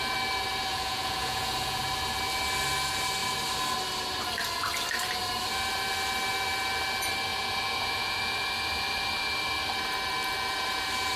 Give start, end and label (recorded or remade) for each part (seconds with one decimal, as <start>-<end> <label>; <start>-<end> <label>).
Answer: 0.0-0.7 recorded; 0.7-1.8 remade; 1.8-7.3 recorded; 7.3-8.2 remade; 8.2-11.2 recorded